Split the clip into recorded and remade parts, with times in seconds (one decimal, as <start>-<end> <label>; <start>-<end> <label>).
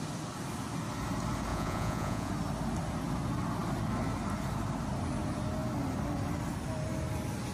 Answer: 0.0-1.5 recorded; 1.5-2.3 remade; 2.3-7.5 recorded